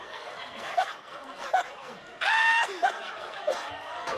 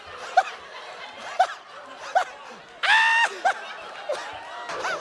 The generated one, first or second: first